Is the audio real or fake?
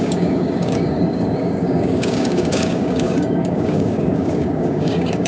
fake